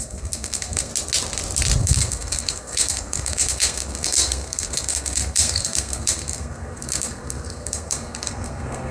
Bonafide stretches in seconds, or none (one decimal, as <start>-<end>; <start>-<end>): 0.9-1.8